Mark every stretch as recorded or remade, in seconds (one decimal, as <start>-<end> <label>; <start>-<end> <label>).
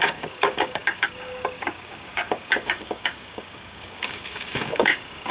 0.0-5.3 remade